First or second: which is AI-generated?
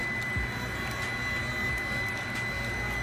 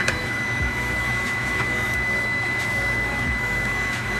second